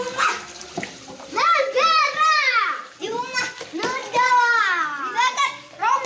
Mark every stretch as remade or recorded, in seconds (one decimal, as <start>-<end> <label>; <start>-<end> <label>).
0.0-0.6 recorded; 0.6-3.4 remade; 3.4-6.1 recorded

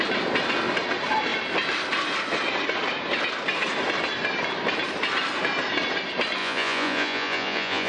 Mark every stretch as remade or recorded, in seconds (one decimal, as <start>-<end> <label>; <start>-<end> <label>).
0.0-6.4 recorded; 6.4-7.9 remade

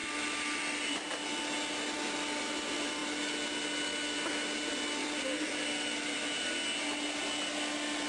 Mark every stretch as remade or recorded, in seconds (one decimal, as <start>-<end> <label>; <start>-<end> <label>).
0.0-8.1 recorded

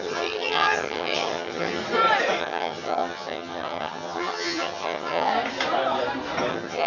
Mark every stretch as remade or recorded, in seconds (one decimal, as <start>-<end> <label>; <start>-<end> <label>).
0.0-1.8 remade; 1.8-2.4 recorded; 2.4-5.3 remade; 5.3-6.5 recorded; 6.5-6.9 remade

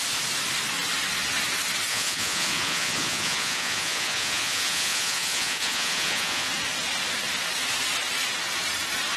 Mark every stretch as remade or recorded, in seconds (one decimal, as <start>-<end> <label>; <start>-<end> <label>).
0.0-1.9 recorded; 1.9-6.5 remade; 6.5-9.2 recorded

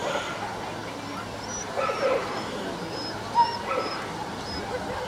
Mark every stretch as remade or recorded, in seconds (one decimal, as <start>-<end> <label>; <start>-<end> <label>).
0.0-5.1 recorded